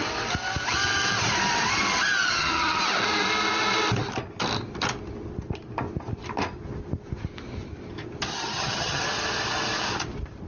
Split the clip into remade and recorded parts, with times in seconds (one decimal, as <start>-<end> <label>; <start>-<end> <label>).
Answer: 0.0-2.3 recorded; 2.3-2.8 remade; 2.8-8.3 recorded; 8.3-9.0 remade; 9.0-10.5 recorded